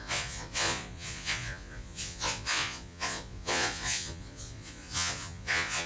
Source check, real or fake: fake